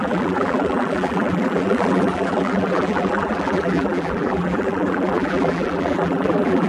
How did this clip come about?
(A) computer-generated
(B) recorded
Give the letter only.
A